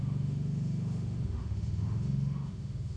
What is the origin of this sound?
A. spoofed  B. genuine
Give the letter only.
A